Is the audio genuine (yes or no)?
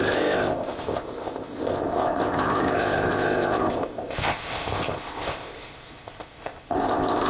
no